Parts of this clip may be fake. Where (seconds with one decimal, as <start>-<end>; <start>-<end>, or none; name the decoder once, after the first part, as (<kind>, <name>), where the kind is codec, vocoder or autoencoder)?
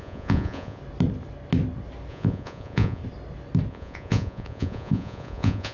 0.0-0.8 (vocoder, Vocos); 2.1-3.0; 3.7-5.7